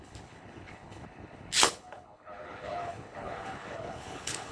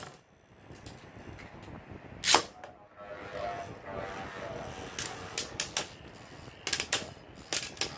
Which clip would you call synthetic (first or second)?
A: first